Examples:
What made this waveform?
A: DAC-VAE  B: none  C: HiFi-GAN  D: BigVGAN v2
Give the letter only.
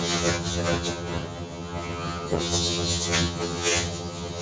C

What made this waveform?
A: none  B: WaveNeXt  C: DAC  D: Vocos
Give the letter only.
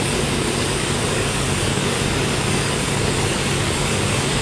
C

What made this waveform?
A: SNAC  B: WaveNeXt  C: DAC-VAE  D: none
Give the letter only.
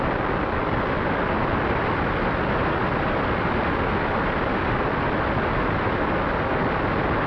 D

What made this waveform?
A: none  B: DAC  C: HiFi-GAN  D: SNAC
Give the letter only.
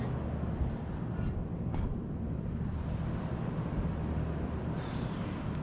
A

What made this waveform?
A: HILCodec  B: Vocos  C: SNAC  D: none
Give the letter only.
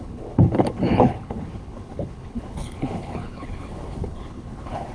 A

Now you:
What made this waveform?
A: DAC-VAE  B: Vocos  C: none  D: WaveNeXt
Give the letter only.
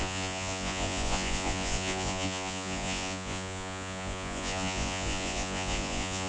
B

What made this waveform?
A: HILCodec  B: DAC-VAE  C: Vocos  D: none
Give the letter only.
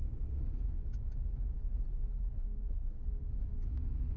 D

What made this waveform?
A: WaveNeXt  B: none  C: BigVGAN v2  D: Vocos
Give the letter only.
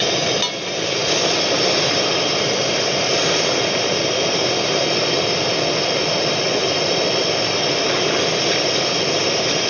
B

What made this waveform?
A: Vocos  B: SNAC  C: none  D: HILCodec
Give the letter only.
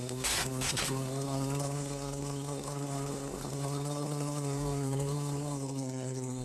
B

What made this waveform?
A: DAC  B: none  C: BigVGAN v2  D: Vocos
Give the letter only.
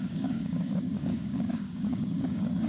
A